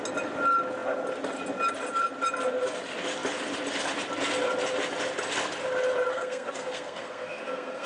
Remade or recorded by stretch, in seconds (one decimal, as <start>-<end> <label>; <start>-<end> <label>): 0.0-6.1 recorded; 6.1-7.9 remade